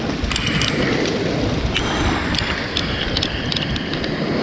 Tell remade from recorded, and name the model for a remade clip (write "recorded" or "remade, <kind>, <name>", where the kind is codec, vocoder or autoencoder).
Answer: recorded